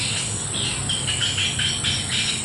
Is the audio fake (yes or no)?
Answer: no